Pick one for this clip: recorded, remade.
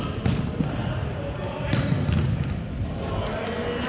recorded